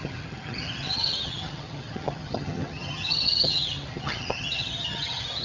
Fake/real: fake